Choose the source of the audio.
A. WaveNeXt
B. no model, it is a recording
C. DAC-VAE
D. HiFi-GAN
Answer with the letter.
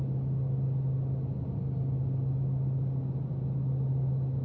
B